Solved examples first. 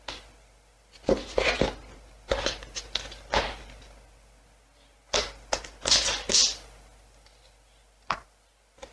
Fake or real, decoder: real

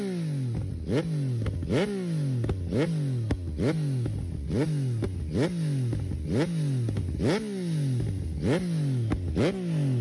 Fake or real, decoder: real